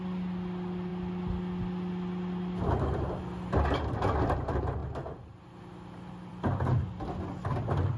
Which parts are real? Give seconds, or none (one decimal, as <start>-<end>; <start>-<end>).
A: 0.0-8.0